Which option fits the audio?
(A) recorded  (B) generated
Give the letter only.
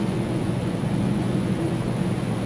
B